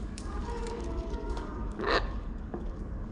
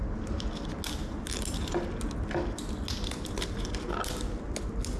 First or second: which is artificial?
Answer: first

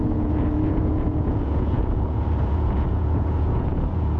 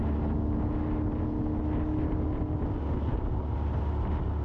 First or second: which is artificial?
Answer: first